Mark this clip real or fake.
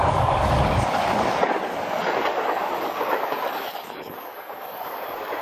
fake